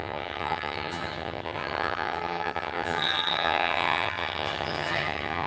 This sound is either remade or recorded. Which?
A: remade